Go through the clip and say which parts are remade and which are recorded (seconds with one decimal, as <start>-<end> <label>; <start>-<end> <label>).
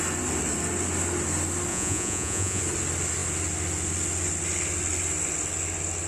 0.0-1.7 recorded; 1.7-2.6 remade; 2.6-6.1 recorded